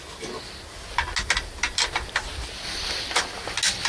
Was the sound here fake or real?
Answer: real